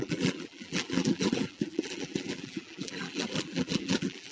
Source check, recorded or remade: remade